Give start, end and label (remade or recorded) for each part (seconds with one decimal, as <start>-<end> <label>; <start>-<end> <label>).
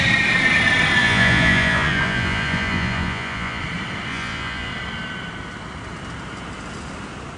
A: 0.0-1.0 recorded; 1.0-3.6 remade; 3.6-4.1 recorded; 4.1-4.7 remade; 4.7-7.4 recorded